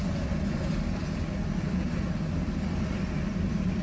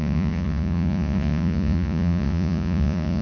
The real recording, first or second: first